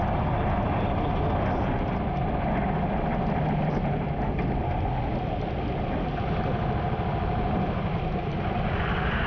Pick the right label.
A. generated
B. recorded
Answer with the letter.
B